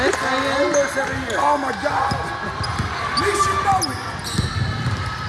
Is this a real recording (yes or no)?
yes